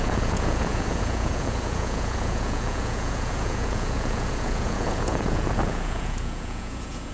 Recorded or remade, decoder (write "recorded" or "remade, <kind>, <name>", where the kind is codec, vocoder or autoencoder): remade, vocoder, Vocos